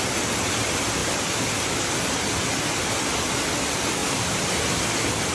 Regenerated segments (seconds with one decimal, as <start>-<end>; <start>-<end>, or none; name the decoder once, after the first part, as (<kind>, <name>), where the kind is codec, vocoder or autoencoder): 1.0-1.7 (vocoder, BigVGAN v2); 4.0-4.5